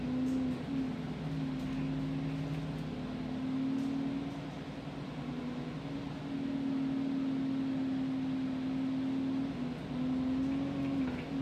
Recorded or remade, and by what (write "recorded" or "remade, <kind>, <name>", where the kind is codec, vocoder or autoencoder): recorded